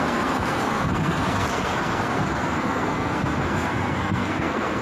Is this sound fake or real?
fake